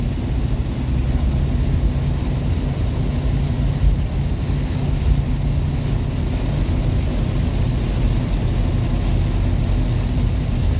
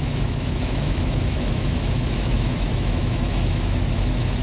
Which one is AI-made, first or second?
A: second